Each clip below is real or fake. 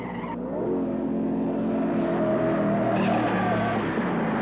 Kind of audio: real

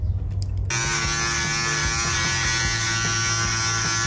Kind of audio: real